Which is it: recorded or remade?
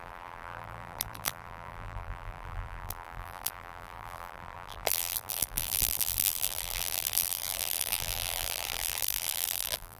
remade